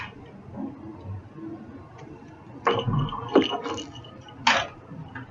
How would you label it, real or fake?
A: real